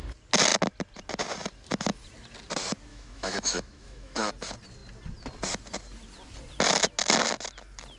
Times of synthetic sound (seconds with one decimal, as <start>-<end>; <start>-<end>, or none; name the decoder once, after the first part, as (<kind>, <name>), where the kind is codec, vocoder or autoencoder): 2.9-4.3 (autoencoder, DAC-VAE)